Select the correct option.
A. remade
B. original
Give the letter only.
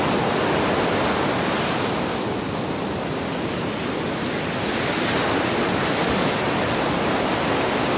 B